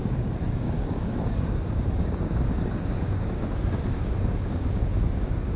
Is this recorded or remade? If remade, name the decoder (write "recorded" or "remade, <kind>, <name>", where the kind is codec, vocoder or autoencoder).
remade, codec, DAC